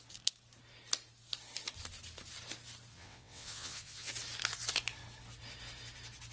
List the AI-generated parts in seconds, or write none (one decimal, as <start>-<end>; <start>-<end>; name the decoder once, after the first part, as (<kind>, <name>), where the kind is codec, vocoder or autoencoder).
2.9-4.1 (vocoder, WaveNeXt)